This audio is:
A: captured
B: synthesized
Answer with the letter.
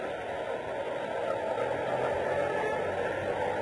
A